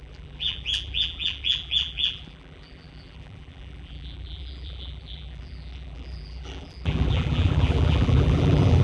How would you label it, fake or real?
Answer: fake